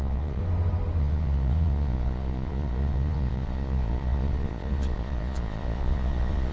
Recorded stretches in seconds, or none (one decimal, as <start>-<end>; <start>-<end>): 0.4-1.0